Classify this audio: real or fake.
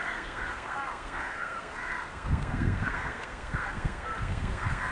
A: fake